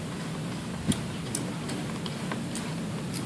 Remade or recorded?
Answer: recorded